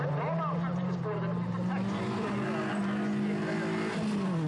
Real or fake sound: real